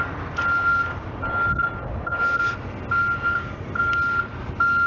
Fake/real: real